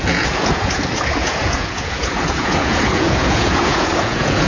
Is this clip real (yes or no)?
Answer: no